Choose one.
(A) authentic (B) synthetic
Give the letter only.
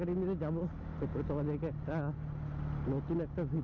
A